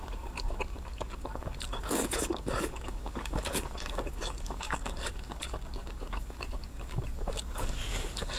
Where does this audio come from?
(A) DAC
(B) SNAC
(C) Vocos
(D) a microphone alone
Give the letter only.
A